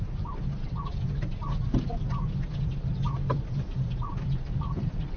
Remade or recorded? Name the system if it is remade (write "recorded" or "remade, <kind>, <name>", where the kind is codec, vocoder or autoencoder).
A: recorded